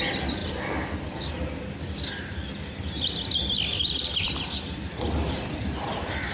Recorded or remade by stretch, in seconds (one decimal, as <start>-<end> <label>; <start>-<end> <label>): 0.0-6.3 recorded